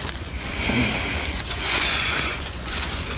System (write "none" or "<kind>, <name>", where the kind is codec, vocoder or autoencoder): vocoder, Vocos